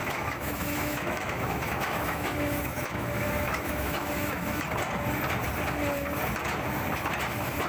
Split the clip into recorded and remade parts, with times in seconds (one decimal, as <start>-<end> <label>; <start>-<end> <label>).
0.0-4.6 remade; 4.6-7.7 recorded